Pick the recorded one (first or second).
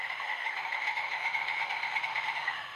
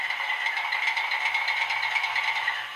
second